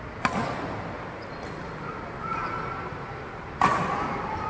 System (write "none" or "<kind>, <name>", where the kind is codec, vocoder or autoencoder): none